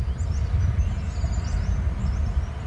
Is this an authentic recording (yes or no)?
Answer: yes